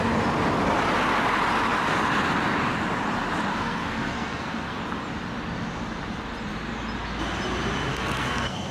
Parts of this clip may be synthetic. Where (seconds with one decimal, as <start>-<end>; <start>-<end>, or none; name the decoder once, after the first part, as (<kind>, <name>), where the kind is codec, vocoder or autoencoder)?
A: 3.5-4.8 (codec, SNAC); 7.9-8.7